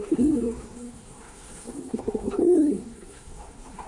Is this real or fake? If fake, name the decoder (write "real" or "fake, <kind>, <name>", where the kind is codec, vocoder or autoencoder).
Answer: fake, codec, SNAC